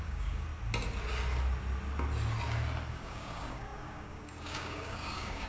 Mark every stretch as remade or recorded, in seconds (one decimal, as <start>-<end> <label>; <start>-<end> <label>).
0.0-0.5 remade; 0.5-2.9 recorded; 2.9-5.5 remade